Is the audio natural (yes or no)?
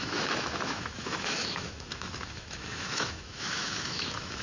no